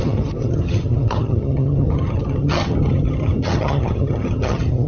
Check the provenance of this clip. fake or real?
fake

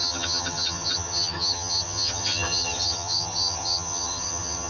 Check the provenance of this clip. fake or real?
fake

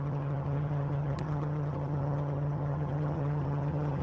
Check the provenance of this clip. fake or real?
fake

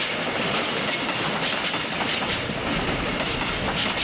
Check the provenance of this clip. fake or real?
real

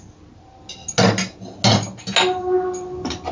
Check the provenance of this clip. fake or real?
real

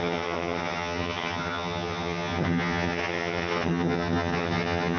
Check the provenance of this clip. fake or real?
fake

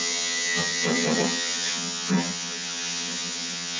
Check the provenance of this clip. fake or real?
fake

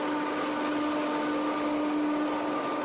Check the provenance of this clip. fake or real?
real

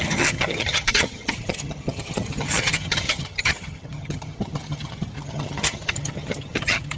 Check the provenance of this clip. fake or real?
fake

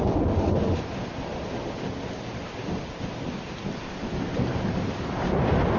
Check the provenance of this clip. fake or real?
real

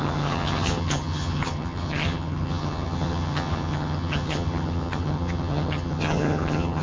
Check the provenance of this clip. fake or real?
fake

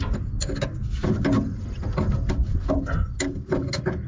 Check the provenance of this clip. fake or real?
real